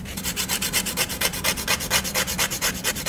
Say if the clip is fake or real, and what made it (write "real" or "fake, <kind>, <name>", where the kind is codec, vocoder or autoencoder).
fake, vocoder, BigVGAN v2